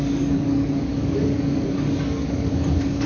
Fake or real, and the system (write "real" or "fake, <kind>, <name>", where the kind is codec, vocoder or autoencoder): fake, codec, DAC